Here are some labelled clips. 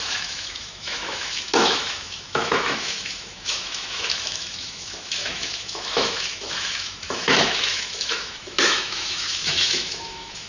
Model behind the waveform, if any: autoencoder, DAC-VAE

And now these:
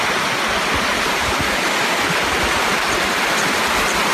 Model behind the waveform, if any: none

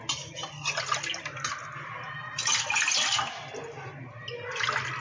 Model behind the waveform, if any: none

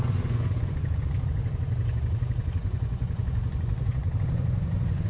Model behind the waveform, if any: vocoder, Vocos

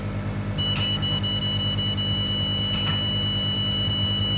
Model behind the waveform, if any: none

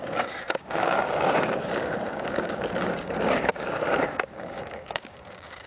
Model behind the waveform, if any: codec, DAC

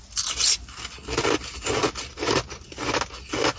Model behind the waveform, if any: none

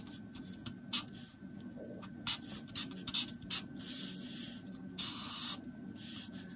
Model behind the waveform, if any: none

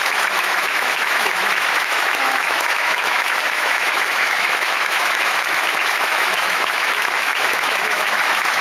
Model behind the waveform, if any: autoencoder, DAC-VAE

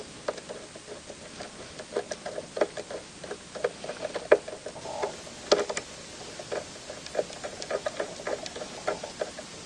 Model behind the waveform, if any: none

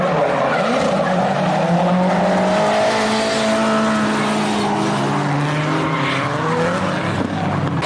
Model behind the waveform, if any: none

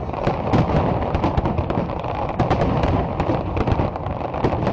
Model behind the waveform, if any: none